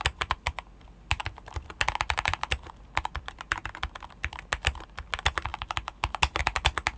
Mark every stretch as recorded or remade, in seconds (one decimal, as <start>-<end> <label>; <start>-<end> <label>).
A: 0.0-7.0 recorded